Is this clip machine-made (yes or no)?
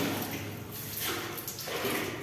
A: no